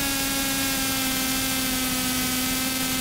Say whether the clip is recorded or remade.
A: recorded